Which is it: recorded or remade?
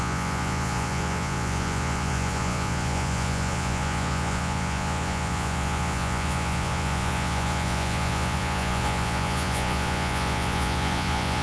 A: remade